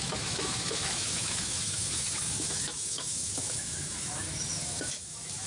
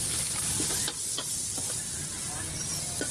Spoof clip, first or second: first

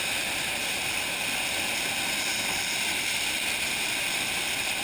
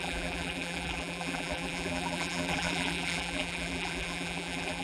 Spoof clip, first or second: second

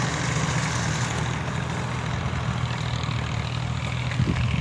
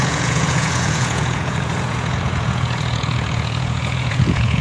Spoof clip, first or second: second